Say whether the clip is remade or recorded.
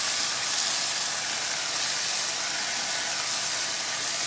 recorded